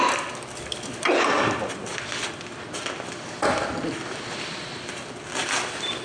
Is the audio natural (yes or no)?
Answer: yes